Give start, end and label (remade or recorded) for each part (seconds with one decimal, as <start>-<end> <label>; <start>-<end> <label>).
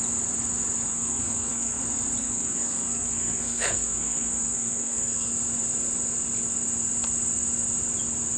0.0-0.9 recorded; 0.9-1.8 remade; 1.8-2.2 recorded; 2.2-5.3 remade; 5.3-8.4 recorded